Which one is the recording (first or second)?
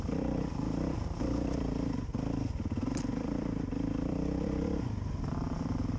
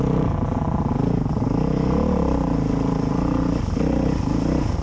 second